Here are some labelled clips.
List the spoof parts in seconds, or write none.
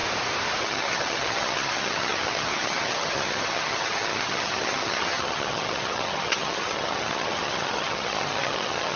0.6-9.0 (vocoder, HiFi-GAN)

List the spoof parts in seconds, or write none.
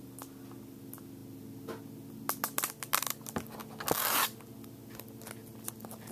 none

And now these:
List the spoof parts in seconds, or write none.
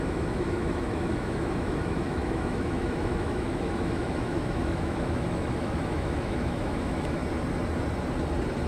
0.0-7.2 (autoencoder, DAC-VAE)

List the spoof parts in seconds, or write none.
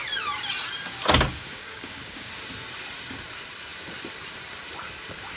1.3-2.3 (codec, DAC)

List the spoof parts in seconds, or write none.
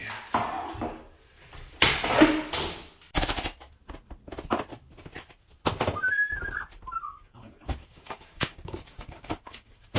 7.0-10.0 (codec, DAC)